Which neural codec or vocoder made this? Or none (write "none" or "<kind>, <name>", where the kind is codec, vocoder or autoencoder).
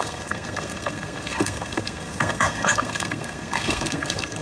codec, SNAC